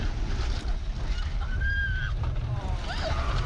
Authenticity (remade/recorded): recorded